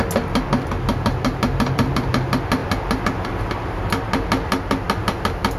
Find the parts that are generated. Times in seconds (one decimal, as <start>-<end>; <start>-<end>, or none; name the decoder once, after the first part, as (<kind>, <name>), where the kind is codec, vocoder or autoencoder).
none